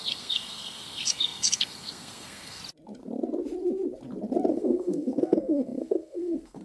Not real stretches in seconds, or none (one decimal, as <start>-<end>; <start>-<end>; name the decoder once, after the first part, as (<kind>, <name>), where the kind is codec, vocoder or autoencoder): 0.0-2.6 (codec, SNAC); 4.5-6.6